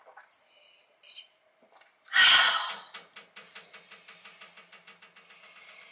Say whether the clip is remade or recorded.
recorded